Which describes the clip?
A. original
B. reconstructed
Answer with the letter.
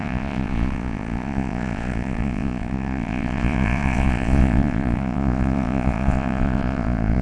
B